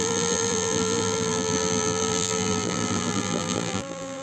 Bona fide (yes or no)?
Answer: no